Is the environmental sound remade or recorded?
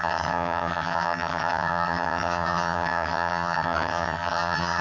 remade